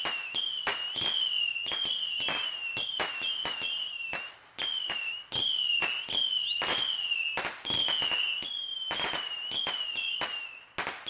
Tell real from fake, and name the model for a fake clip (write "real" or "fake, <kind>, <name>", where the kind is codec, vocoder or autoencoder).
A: real